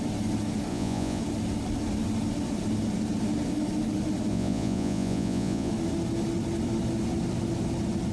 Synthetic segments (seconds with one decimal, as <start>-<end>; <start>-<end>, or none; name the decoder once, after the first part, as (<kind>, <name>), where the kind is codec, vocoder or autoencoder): 0.7-1.2 (vocoder, Vocos); 4.3-5.7